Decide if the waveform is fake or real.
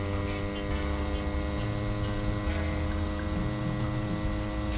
real